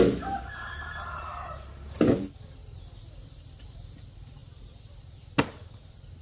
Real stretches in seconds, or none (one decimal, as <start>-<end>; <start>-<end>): 0.0-6.2